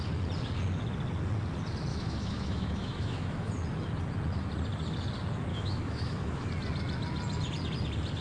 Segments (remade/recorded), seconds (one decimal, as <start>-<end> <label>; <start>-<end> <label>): 0.0-1.9 recorded; 1.9-3.5 remade; 3.5-5.5 recorded; 5.5-6.5 remade; 6.5-8.2 recorded